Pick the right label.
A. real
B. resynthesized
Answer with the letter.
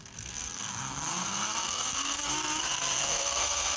B